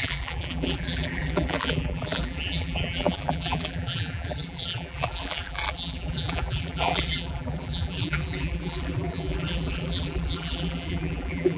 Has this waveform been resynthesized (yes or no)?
yes